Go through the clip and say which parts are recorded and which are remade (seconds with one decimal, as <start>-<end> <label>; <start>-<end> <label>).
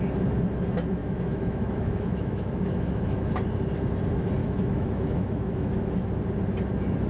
0.0-1.0 recorded; 1.0-3.4 remade; 3.4-4.4 recorded; 4.4-5.7 remade; 5.7-7.1 recorded